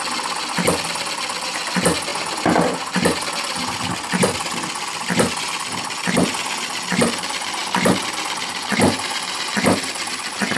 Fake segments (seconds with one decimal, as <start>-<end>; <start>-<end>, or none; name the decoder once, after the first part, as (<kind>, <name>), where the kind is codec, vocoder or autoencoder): none